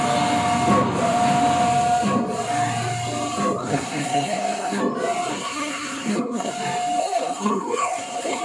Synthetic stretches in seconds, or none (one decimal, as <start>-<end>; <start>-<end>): 3.6-4.8; 5.3-6.5; 7.0-8.4